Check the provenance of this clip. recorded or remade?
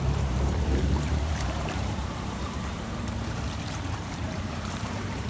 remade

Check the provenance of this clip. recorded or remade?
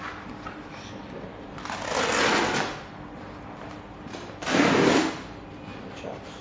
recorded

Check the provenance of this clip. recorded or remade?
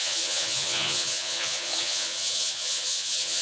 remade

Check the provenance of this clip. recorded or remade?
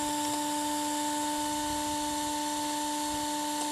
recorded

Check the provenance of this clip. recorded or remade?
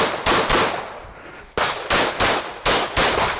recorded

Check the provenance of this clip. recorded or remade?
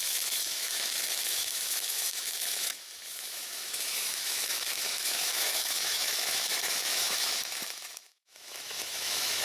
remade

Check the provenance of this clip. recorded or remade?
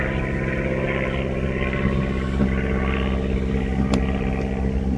recorded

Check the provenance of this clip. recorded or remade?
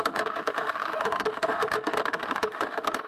remade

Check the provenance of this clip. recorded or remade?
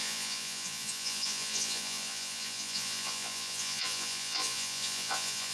remade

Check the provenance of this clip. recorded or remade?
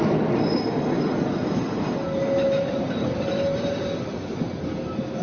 recorded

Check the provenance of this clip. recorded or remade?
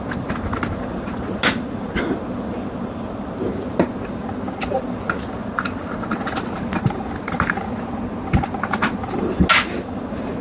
recorded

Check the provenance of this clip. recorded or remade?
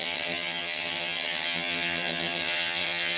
remade